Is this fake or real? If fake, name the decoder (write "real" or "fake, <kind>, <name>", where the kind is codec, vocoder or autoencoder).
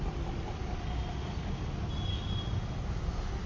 real